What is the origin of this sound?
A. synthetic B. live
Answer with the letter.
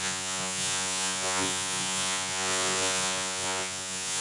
A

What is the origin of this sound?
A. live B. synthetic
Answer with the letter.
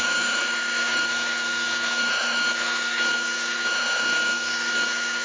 B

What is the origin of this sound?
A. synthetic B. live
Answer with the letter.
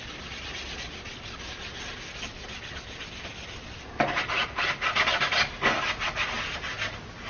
B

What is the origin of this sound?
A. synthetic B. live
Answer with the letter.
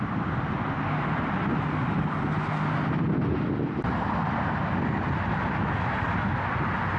B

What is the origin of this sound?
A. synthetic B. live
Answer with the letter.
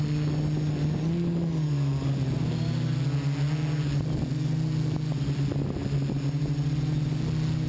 B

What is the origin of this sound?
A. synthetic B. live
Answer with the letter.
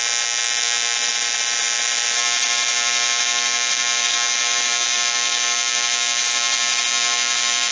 B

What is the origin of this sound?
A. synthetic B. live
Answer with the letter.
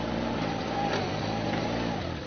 B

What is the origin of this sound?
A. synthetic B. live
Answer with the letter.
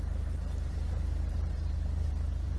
A